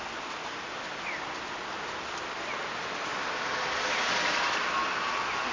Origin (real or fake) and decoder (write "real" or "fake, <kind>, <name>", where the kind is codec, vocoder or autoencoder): real